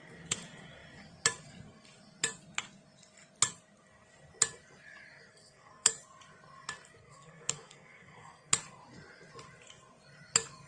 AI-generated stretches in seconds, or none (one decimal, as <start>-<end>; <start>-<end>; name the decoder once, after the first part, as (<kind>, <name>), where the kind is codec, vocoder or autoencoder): 5.3-5.9 (codec, SNAC); 7.0-8.5